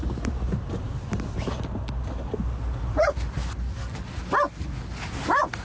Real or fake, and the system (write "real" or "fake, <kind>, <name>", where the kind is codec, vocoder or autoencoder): real